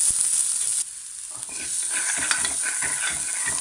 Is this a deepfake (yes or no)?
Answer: no